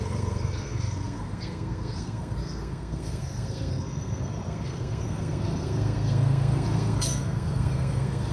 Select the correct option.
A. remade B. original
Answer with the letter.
A